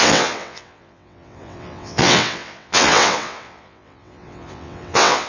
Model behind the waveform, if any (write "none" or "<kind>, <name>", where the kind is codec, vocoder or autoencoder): vocoder, WaveNeXt